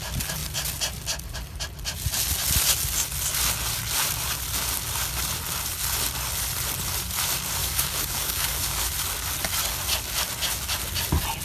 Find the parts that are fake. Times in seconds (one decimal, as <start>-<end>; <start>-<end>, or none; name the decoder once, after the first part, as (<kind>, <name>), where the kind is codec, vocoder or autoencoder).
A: 7.6-8.9 (codec, DAC)